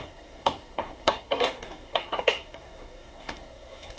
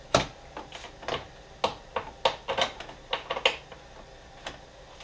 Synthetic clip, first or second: first